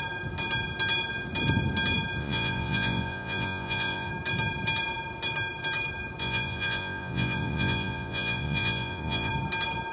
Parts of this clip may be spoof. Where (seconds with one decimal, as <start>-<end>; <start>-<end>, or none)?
2.2-4.1; 6.2-9.3